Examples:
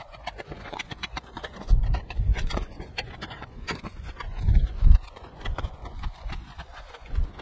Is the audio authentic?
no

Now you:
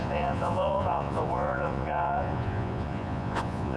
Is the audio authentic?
no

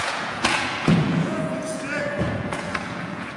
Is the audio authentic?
no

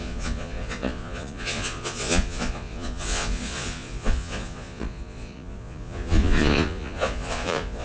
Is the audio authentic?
no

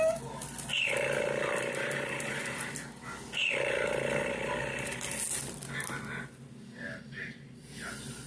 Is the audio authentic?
yes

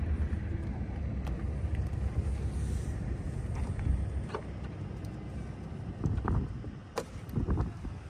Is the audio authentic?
yes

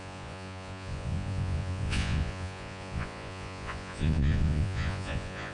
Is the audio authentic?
no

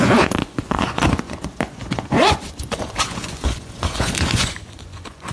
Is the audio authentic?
no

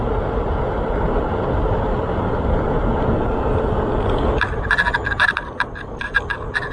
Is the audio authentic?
yes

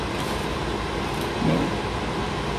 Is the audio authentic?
yes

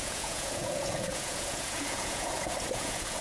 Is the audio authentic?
no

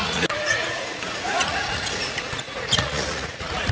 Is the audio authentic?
no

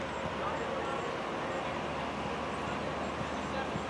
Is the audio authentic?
yes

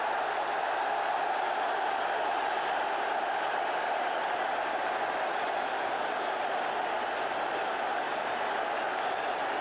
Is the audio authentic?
yes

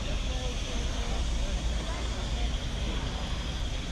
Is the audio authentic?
yes